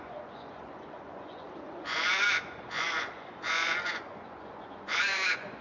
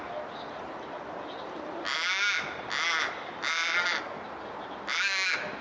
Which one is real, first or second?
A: second